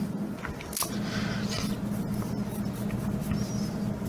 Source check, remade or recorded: recorded